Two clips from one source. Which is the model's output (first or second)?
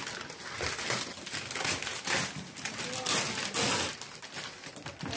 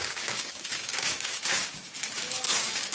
second